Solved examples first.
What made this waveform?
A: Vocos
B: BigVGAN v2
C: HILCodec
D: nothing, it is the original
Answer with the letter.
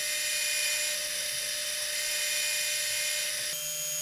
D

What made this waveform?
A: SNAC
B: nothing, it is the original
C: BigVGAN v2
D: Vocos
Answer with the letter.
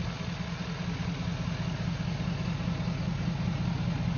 B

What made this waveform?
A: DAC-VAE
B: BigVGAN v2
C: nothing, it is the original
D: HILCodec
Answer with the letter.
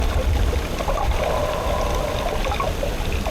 C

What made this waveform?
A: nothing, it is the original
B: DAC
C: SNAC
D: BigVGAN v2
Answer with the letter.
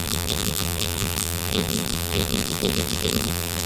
D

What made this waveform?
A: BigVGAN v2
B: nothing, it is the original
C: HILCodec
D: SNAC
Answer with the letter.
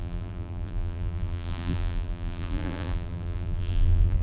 A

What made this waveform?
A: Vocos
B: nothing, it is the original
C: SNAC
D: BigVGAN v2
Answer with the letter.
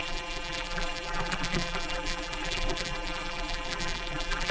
D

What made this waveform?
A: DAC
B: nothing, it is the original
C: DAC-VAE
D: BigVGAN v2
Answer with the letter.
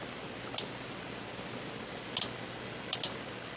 B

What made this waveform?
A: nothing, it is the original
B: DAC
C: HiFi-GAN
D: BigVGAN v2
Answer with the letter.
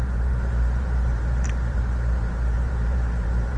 D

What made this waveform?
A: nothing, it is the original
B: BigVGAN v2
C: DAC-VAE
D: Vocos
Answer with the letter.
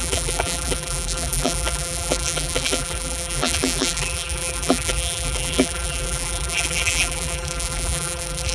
B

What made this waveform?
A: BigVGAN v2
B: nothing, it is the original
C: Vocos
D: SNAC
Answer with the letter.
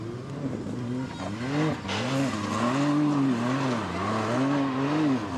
B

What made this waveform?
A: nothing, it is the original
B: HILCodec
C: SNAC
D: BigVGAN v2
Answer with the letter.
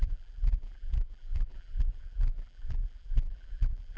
D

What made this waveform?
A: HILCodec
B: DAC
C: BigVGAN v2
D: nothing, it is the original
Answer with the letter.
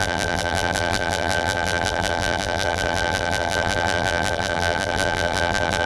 C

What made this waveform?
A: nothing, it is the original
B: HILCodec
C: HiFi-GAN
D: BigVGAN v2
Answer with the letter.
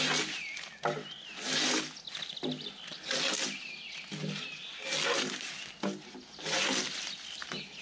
A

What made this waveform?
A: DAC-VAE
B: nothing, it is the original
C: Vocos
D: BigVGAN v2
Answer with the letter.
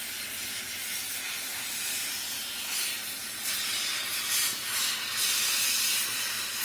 B